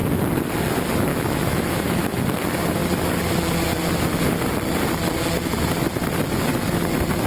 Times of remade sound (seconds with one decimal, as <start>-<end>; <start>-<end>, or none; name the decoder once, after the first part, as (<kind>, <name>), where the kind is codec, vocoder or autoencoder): 1.1-2.2 (autoencoder, DAC-VAE)